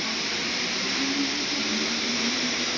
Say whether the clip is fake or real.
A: fake